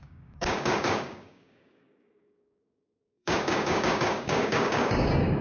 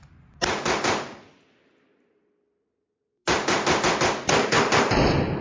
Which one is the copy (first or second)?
first